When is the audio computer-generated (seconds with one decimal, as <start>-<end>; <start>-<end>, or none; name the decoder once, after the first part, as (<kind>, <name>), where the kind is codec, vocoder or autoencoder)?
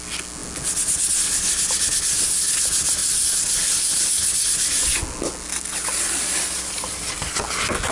3.0-3.9 (vocoder, BigVGAN v2); 5.7-7.4